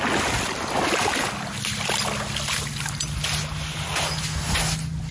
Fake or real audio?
real